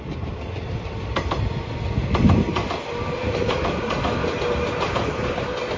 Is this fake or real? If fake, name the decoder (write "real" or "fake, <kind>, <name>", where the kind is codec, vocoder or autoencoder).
real